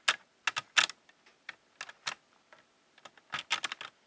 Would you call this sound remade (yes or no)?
no